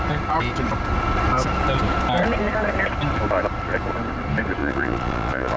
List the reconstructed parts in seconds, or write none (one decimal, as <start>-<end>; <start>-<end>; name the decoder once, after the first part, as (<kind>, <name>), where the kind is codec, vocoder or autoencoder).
4.6-5.6 (vocoder, Vocos)